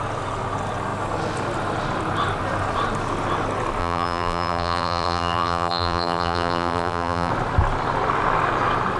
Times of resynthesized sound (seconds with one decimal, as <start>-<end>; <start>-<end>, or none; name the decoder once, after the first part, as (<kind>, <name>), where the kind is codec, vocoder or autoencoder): 3.8-7.3 (vocoder, BigVGAN v2)